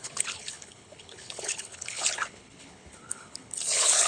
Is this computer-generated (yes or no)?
yes